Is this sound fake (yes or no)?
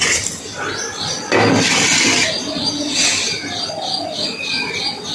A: no